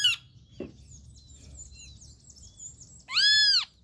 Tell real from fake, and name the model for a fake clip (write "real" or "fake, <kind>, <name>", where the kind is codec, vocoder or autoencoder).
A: real